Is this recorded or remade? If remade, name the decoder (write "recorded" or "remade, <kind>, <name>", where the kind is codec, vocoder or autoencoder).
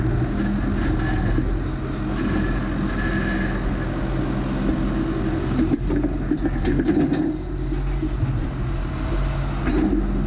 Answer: recorded